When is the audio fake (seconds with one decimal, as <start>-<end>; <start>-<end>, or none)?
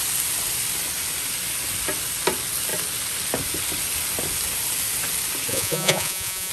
5.5-6.5